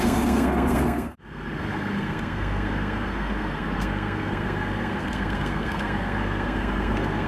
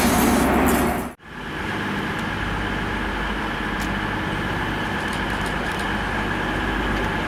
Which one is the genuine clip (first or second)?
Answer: second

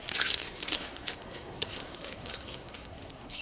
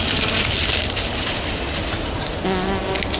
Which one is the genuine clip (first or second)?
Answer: second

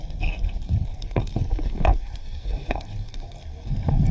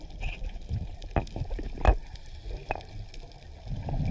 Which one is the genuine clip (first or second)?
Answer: second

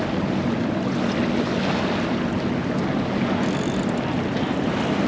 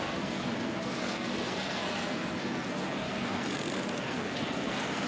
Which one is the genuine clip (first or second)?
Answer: first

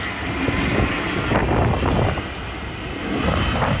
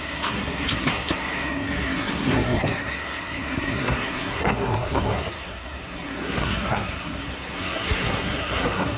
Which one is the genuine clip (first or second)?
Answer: first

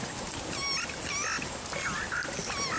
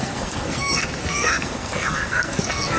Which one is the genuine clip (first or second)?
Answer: first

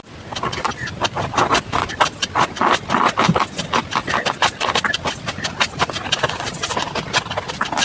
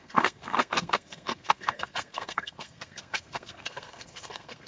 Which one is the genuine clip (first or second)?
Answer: first